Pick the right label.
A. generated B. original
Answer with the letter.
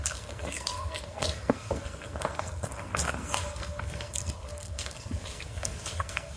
A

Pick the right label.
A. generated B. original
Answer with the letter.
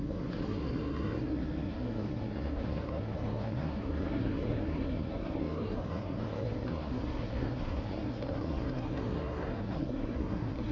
A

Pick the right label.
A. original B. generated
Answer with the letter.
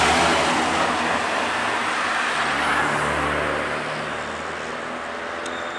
A